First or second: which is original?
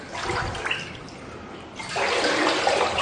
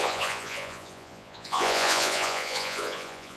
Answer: first